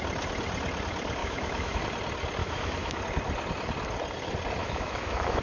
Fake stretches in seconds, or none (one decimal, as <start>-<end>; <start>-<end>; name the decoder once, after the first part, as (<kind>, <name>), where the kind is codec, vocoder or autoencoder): 1.2-1.8 (autoencoder, DAC-VAE); 2.4-3.0; 4.6-5.4